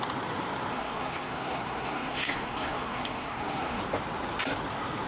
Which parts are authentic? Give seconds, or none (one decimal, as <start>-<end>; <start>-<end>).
0.0-0.7; 3.8-5.1